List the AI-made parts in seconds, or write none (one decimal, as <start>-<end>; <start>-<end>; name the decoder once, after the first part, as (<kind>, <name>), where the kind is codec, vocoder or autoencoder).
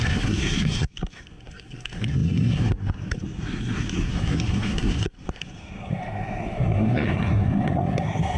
0.0-8.4 (codec, SNAC)